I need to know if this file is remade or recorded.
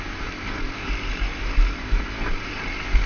remade